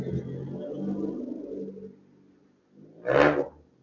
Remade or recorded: recorded